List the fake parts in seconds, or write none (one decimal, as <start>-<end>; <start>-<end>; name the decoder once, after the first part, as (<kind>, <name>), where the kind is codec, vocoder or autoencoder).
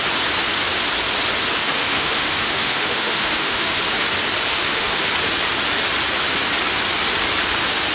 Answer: 1.6-3.8 (autoencoder, DAC-VAE); 4.5-5.1